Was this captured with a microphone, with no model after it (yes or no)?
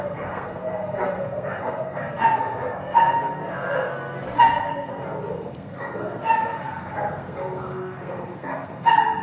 no